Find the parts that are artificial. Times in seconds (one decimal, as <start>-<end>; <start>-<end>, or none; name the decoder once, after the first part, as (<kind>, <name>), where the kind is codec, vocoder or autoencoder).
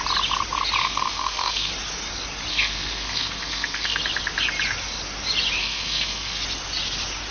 0.8-1.7 (codec, SNAC); 2.5-4.0; 5.6-6.4